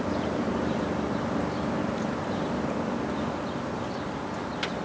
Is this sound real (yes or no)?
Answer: yes